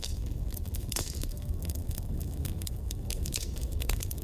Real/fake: fake